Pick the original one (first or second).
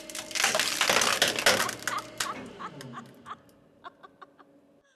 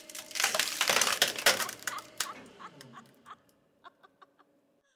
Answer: first